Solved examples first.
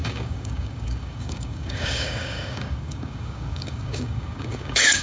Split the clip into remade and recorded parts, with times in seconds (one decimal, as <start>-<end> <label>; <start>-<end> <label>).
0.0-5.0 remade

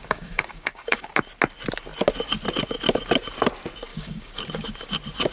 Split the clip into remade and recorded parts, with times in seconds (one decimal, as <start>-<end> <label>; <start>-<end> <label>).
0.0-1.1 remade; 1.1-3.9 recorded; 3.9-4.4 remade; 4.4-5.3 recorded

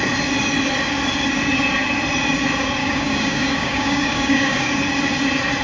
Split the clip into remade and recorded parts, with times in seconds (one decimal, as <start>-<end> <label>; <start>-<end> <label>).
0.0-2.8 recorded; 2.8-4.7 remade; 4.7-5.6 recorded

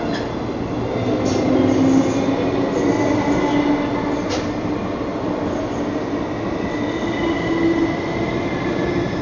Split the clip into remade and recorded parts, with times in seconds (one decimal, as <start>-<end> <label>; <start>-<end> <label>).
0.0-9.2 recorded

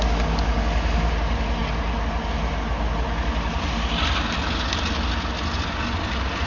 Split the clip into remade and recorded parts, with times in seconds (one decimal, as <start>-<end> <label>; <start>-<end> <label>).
0.0-1.1 remade; 1.1-6.5 recorded